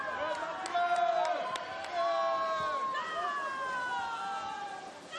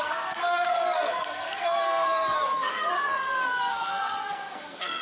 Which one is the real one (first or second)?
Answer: first